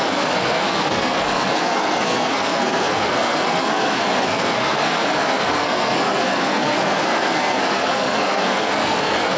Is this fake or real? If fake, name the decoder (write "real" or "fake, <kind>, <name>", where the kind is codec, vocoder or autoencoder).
fake, codec, SNAC